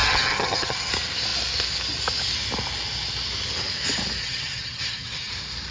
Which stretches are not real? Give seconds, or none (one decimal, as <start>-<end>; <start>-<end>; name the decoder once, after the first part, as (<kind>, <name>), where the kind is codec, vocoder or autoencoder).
0.0-0.9 (vocoder, HiFi-GAN); 4.2-5.3